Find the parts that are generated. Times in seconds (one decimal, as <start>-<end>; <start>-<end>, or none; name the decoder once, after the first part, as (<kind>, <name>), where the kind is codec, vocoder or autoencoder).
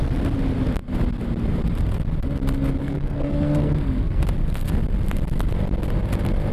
2.8-4.2 (codec, SNAC)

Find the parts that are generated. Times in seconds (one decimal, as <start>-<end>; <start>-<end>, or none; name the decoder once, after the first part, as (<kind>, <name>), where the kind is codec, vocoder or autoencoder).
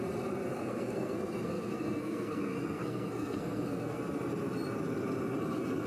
0.5-4.0 (codec, SNAC)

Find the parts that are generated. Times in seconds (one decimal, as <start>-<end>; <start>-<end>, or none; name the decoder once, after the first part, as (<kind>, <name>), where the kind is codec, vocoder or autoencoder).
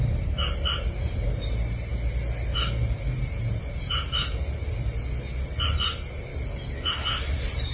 none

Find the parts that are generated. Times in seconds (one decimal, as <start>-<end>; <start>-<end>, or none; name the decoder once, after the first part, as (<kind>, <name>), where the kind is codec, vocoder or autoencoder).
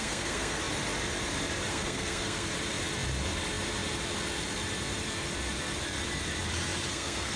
0.0-0.6 (codec, SNAC); 1.7-2.5; 6.9-7.4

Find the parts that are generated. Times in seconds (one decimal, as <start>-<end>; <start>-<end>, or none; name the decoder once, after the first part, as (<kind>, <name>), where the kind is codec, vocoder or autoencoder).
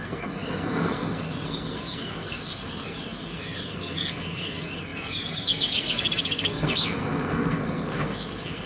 0.0-8.7 (codec, SNAC)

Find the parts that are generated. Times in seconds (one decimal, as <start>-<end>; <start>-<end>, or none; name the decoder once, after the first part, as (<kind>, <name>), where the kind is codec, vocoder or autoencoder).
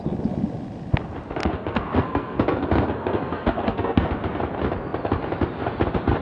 1.4-4.1 (codec, SNAC)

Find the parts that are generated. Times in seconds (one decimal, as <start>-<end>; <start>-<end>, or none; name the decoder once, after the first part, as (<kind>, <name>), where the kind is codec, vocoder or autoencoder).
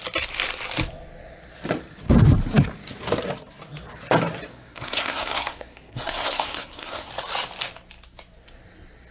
4.5-7.1 (codec, SNAC)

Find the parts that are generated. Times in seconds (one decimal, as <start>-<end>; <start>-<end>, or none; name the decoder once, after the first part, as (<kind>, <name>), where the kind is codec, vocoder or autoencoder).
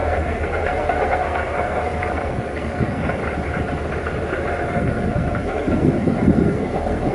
0.0-3.2 (codec, SNAC); 4.7-7.1